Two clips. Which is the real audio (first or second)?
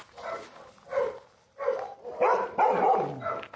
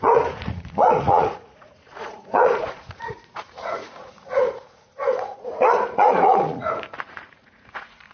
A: first